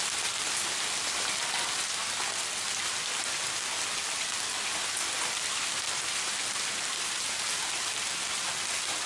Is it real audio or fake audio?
real